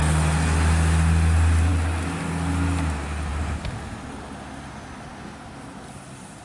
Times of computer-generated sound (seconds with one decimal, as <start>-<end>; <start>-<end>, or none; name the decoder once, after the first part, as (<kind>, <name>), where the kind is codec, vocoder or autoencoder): none